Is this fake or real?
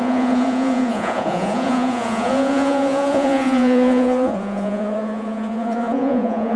fake